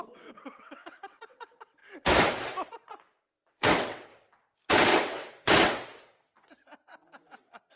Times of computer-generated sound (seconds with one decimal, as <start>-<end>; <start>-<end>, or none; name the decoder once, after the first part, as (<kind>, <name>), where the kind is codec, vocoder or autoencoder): 0.0-1.8 (vocoder, WaveNeXt); 2.7-4.1; 4.9-7.8